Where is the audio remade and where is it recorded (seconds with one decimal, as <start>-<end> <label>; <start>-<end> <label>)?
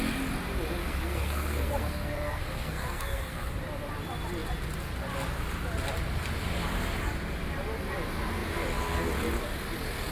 0.0-0.8 recorded; 0.8-3.5 remade; 3.5-10.1 recorded